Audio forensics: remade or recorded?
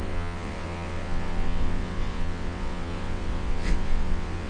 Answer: remade